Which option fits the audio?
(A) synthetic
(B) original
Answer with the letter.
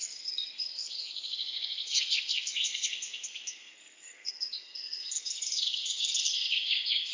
A